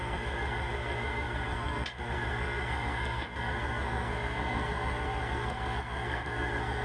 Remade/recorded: remade